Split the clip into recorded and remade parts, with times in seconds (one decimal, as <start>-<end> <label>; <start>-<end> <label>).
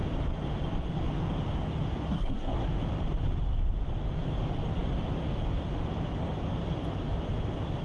0.0-2.1 recorded; 2.1-2.7 remade; 2.7-7.8 recorded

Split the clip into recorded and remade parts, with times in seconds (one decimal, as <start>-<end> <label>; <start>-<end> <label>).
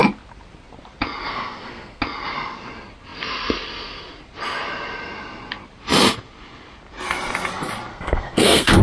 0.0-1.2 recorded; 1.2-2.0 remade; 2.0-7.9 recorded; 7.9-8.8 remade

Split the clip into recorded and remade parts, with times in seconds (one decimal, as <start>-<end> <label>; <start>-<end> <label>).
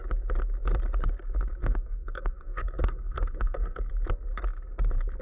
0.0-1.6 recorded; 1.6-3.9 remade; 3.9-5.2 recorded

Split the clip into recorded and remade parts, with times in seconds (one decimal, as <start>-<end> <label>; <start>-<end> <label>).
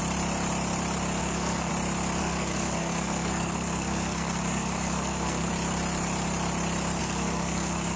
0.0-1.2 recorded; 1.2-1.7 remade; 1.7-2.2 recorded; 2.2-5.5 remade; 5.5-7.0 recorded; 7.0-8.0 remade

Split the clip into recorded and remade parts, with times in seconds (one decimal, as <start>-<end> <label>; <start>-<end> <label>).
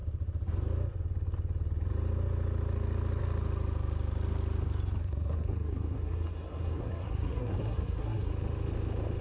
0.0-5.0 recorded; 5.0-8.3 remade; 8.3-9.2 recorded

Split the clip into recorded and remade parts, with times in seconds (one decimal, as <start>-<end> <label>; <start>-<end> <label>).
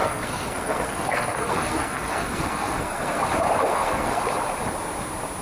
0.0-3.2 remade; 3.2-3.6 recorded; 3.6-4.2 remade; 4.2-5.4 recorded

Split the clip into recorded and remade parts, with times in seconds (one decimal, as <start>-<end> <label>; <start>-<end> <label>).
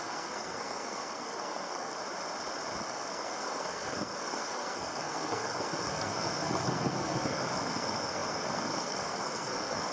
0.0-1.9 remade; 1.9-2.8 recorded; 2.8-9.9 remade